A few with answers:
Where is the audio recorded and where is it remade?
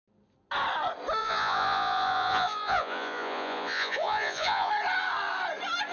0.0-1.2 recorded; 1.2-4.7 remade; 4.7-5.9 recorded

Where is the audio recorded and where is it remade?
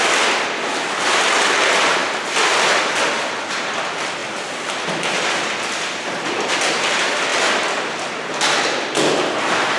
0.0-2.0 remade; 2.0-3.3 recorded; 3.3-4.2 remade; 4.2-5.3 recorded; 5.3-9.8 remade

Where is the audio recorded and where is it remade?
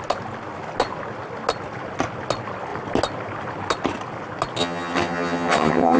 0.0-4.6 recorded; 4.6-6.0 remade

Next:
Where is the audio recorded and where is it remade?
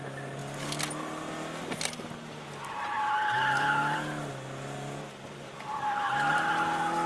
0.0-7.1 recorded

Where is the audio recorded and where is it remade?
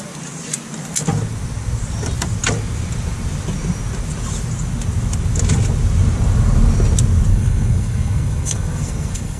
0.0-7.3 recorded; 7.3-9.4 remade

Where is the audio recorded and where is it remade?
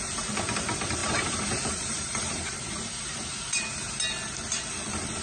0.0-1.0 recorded; 1.0-3.6 remade; 3.6-5.2 recorded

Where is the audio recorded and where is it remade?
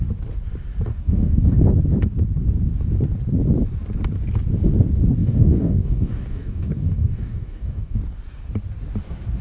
0.0-0.9 recorded; 0.9-1.7 remade; 1.7-5.2 recorded; 5.2-8.0 remade; 8.0-9.4 recorded